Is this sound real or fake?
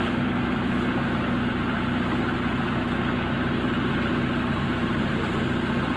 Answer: real